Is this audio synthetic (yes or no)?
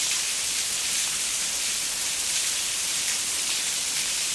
yes